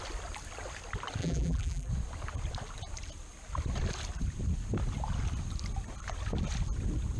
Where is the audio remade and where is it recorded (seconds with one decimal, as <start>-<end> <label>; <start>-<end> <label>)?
0.0-1.2 recorded; 1.2-1.9 remade; 1.9-7.2 recorded